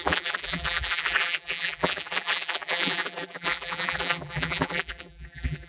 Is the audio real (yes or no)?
no